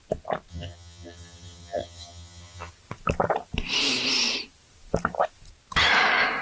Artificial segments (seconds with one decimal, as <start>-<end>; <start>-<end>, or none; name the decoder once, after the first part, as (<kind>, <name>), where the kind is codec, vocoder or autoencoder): 0.5-2.7 (vocoder, HiFi-GAN)

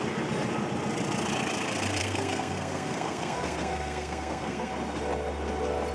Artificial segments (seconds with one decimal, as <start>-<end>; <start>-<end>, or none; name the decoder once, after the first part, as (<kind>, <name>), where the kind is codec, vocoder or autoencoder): 2.0-4.7 (codec, SNAC)

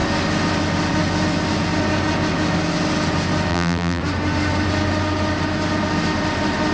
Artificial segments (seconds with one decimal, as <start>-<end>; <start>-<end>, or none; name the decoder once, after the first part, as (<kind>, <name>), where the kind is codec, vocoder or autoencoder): 3.5-4.0 (vocoder, BigVGAN v2)

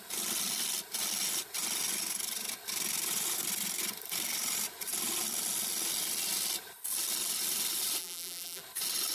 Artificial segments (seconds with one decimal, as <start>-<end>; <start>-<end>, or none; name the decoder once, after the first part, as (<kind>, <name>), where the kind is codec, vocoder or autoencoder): 8.0-8.6 (vocoder, BigVGAN v2)

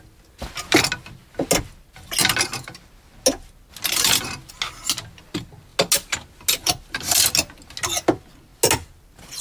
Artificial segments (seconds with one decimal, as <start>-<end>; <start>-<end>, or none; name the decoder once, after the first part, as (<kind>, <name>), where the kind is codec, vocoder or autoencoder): none

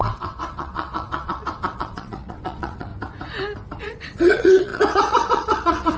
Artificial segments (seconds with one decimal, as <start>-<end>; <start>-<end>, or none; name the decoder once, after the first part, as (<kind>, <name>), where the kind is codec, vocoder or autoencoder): 0.0-2.9 (vocoder, WaveNeXt); 3.8-6.0